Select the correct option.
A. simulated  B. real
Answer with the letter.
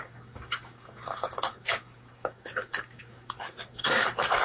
A